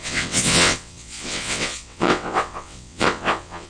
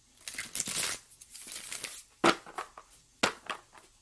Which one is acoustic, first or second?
second